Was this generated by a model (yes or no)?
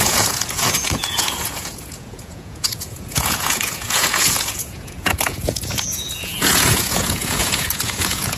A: yes